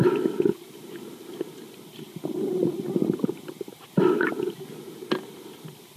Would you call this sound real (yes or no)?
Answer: yes